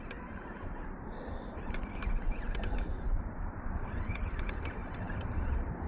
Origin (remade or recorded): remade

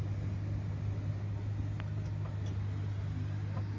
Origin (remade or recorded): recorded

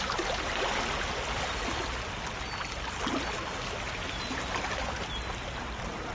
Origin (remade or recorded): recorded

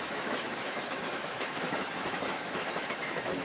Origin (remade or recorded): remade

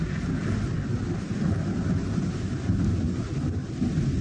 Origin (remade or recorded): recorded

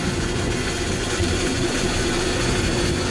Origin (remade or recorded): remade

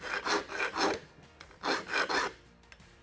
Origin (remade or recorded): recorded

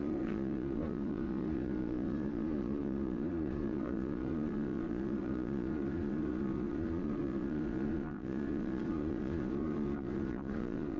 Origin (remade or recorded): remade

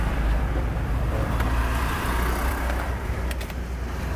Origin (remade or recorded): remade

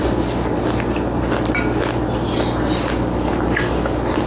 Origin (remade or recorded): recorded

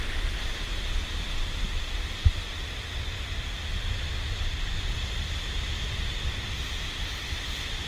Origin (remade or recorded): recorded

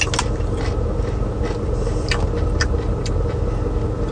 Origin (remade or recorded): recorded